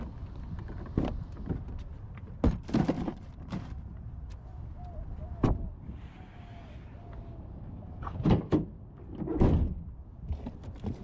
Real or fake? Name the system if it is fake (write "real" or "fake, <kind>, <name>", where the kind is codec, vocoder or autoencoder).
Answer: real